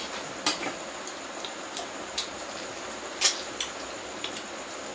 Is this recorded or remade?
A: recorded